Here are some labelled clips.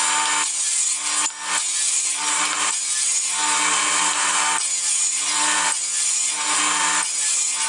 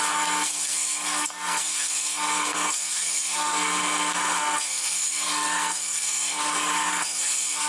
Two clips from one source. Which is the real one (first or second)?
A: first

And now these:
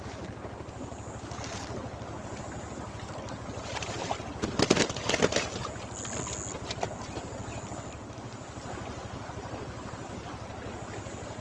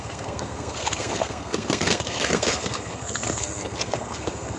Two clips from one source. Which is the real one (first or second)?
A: first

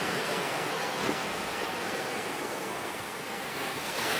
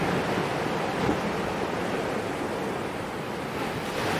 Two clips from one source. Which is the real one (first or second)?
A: second